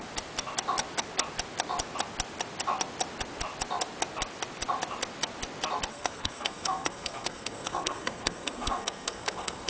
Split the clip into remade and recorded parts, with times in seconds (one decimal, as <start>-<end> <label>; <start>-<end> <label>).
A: 0.0-5.9 recorded; 5.9-9.7 remade